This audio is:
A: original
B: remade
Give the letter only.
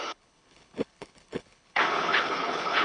B